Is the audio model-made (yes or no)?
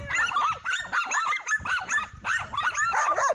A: no